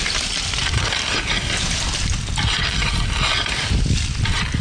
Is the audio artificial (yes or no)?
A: no